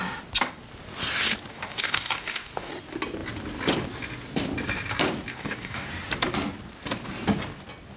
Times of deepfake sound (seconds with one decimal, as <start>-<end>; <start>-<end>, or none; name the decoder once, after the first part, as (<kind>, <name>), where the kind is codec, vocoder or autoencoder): 1.5-2.7 (codec, DAC); 5.3-5.9